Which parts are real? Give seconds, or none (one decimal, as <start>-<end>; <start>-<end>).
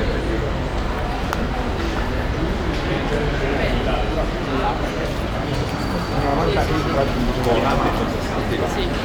0.0-9.0